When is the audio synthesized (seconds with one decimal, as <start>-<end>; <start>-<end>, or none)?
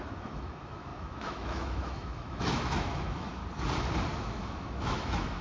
0.0-3.4; 4.2-5.4